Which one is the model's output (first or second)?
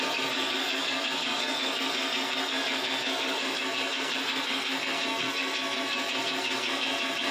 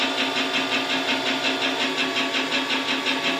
first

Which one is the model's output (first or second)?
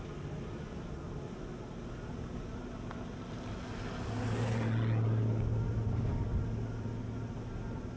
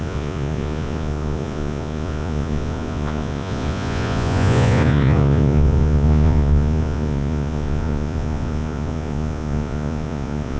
second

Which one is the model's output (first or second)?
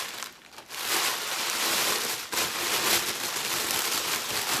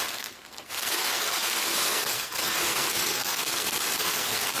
second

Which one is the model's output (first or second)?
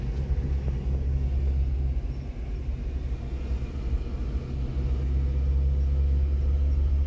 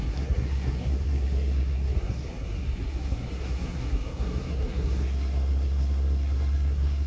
second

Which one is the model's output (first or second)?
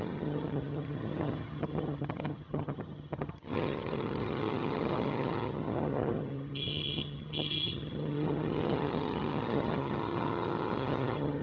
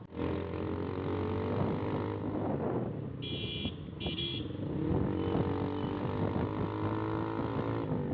first